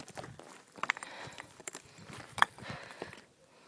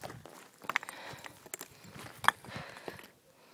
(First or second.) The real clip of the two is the second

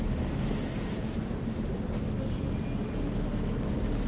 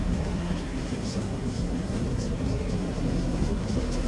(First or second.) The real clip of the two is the first